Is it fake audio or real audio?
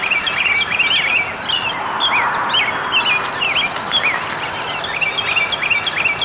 real